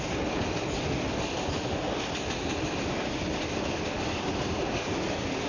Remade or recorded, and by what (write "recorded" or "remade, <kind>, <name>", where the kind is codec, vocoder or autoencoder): recorded